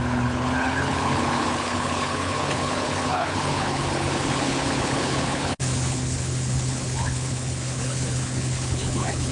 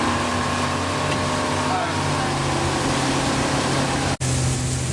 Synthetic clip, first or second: first